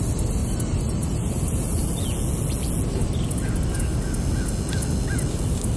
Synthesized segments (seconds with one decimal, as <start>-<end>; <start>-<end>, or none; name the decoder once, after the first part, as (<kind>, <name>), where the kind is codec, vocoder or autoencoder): 0.4-1.9 (vocoder, BigVGAN v2)